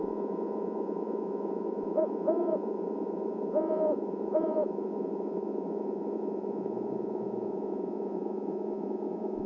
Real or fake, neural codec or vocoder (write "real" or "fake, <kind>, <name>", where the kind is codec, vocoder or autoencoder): fake, vocoder, Vocos